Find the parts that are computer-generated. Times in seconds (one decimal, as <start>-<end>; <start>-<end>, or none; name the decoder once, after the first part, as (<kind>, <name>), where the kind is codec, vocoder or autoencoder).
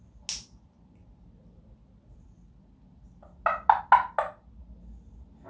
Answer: none